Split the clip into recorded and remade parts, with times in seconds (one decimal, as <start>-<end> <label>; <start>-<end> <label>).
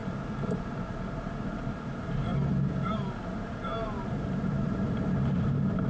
0.0-0.6 recorded; 0.6-2.3 remade; 2.3-3.2 recorded; 3.2-5.9 remade